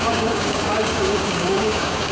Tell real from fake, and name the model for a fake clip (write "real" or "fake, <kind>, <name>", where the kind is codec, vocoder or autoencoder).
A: fake, codec, DAC